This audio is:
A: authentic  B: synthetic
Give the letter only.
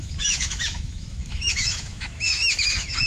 B